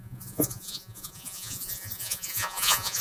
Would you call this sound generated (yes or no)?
yes